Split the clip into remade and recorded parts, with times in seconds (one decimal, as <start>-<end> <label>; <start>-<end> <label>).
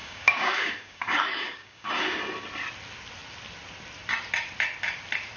0.0-2.2 remade; 2.2-5.4 recorded